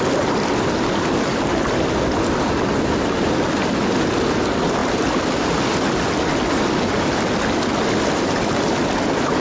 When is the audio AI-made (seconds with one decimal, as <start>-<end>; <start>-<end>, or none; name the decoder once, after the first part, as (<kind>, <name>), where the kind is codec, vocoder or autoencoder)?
none

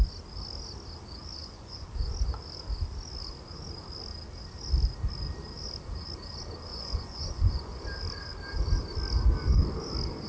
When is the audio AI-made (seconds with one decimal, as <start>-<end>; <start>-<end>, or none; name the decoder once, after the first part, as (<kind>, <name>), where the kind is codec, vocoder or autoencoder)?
1.4-1.9 (vocoder, Vocos); 6.7-7.7

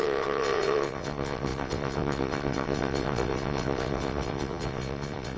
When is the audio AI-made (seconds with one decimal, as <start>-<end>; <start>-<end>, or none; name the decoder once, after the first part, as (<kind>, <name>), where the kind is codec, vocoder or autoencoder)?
0.0-5.4 (vocoder, WaveNeXt)

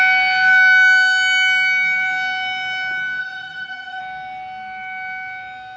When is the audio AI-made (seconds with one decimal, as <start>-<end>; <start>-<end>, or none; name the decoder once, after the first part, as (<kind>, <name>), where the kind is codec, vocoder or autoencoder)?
3.2-4.0 (vocoder, HiFi-GAN)

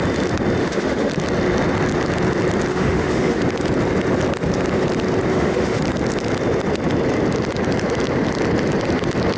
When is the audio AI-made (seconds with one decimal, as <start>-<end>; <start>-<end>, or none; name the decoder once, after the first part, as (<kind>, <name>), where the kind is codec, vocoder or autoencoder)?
0.6-1.1 (autoencoder, DAC-VAE); 2.7-3.4; 5.3-5.8

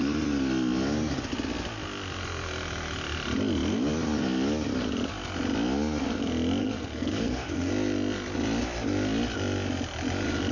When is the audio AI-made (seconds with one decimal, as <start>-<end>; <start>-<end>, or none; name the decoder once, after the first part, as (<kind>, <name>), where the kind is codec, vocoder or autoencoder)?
6.6-7.7 (codec, SNAC)

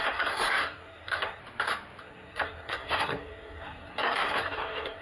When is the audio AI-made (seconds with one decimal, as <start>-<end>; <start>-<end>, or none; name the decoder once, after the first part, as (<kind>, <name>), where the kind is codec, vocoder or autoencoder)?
0.0-1.4 (codec, SNAC); 2.0-5.0

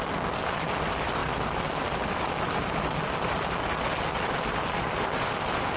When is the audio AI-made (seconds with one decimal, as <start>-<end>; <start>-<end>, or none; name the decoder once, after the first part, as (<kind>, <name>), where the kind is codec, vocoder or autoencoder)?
none